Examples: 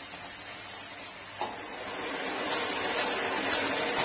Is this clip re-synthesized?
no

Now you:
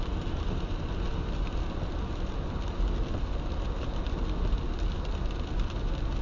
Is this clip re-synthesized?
no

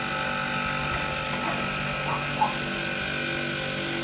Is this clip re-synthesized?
no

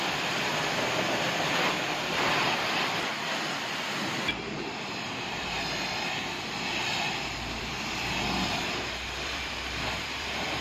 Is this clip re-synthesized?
yes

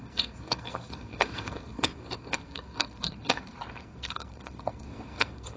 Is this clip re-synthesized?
yes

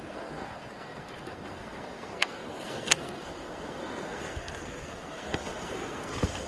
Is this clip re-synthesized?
yes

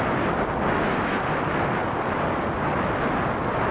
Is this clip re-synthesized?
no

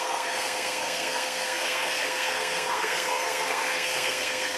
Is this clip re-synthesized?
yes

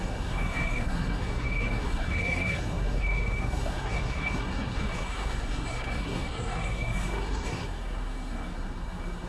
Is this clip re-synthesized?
yes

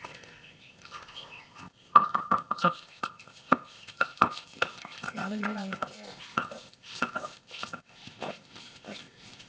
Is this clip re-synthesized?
yes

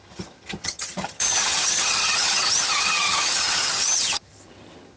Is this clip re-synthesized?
yes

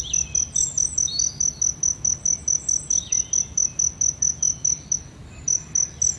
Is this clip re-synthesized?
no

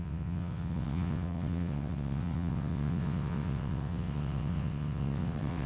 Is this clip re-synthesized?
yes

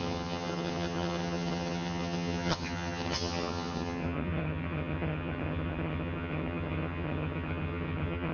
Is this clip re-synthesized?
yes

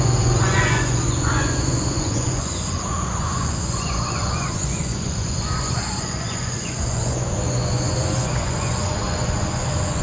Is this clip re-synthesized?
yes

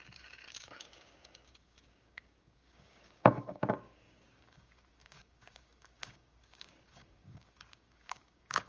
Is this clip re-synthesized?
yes